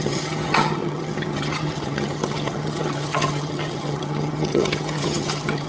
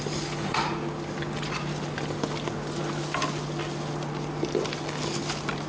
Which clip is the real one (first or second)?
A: second